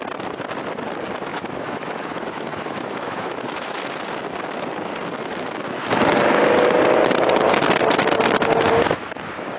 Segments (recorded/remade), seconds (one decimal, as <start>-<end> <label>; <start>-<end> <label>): 0.0-1.3 recorded; 1.3-3.8 remade; 3.8-9.6 recorded